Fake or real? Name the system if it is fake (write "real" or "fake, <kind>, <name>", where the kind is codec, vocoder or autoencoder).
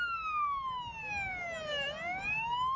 real